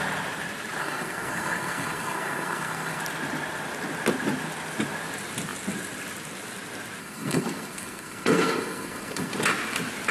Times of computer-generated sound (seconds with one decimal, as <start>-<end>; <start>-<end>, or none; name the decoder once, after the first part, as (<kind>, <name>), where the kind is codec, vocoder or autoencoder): 0.8-3.0 (codec, SNAC); 7.0-9.3